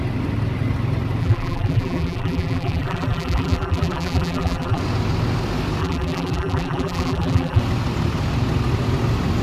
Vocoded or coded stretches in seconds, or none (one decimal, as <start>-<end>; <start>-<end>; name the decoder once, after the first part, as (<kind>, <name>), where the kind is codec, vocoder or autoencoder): 1.2-4.8 (vocoder, BigVGAN v2); 5.8-7.6